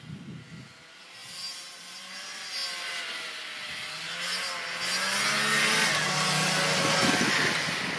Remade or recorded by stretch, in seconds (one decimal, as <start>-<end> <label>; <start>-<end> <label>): 0.0-8.0 recorded